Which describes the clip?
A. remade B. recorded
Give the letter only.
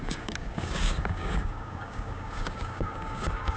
A